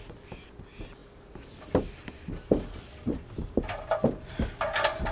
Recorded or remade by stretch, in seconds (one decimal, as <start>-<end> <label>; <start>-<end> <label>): 0.0-5.1 recorded